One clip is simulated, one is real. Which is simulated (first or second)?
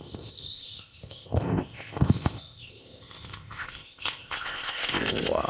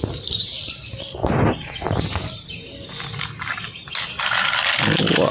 first